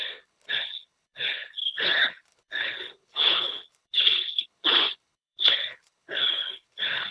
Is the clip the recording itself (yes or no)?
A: no